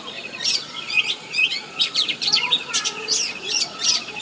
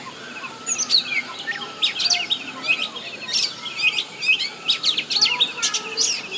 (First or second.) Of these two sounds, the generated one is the first